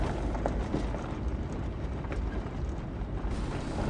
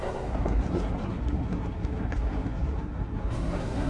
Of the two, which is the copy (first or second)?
second